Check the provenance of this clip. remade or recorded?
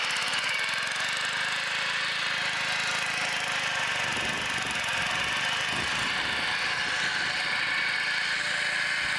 recorded